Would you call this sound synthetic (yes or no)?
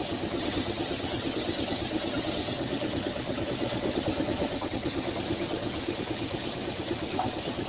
yes